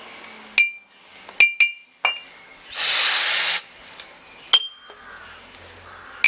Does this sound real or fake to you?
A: real